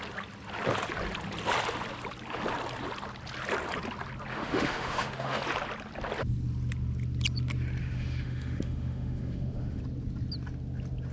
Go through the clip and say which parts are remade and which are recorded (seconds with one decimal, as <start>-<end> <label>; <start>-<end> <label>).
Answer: 0.0-4.3 recorded; 4.3-5.4 remade; 5.4-7.8 recorded; 7.8-9.8 remade; 9.8-11.1 recorded

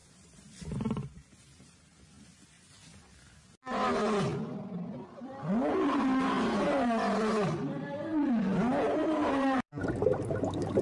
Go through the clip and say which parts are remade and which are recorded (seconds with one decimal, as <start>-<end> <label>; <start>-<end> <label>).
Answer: 0.0-1.8 remade; 1.8-9.2 recorded; 9.2-10.8 remade

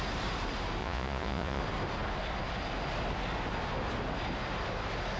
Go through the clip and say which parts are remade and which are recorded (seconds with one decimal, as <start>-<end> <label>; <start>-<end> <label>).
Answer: 0.0-0.8 recorded; 0.8-1.6 remade; 1.6-5.2 recorded

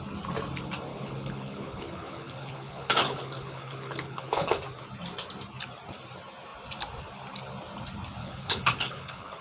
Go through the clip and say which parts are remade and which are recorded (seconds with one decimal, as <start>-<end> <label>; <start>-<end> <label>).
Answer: 0.0-0.9 recorded; 0.9-4.6 remade; 4.6-8.2 recorded; 8.2-9.4 remade

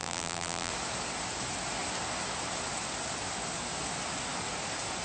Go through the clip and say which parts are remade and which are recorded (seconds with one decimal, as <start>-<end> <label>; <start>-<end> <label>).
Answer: 0.0-0.7 remade; 0.7-5.0 recorded